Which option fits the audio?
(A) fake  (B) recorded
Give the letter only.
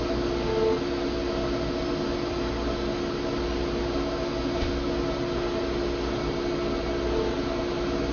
B